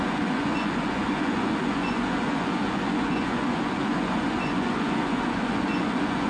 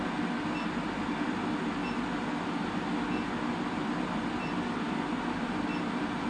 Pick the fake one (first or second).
first